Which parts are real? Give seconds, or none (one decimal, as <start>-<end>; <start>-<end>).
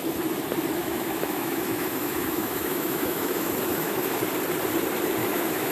0.0-0.8; 4.2-5.2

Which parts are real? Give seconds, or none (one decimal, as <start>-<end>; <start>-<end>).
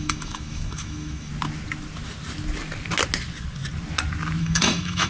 1.3-4.4